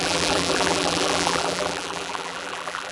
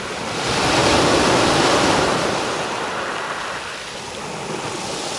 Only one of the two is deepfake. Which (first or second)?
first